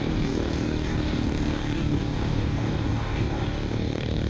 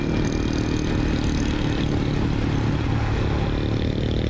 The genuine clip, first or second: second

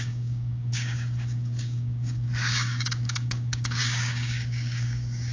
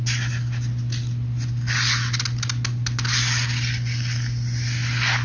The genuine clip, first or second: second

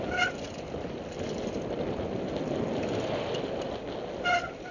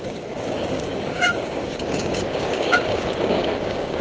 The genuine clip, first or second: first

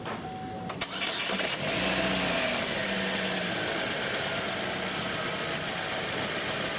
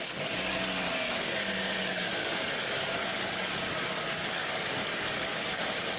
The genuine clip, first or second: first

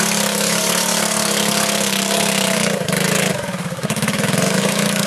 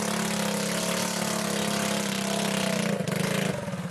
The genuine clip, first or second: second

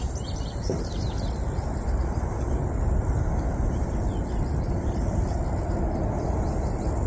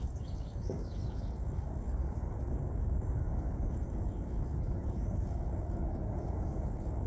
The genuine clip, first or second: first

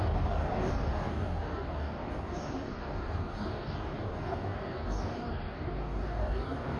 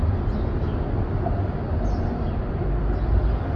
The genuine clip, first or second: second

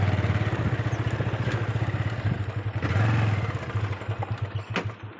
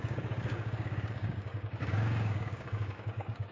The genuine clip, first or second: first